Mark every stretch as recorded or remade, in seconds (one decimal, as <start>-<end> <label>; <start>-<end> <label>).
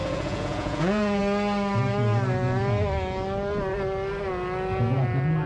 0.0-1.2 remade; 1.2-5.5 recorded